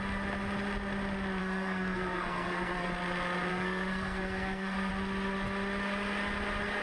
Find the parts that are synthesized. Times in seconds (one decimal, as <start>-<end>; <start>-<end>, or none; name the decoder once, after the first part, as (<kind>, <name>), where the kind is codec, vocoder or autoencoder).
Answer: 1.4-2.9 (codec, SNAC); 3.5-4.9